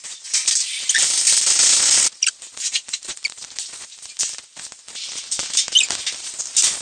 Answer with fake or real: real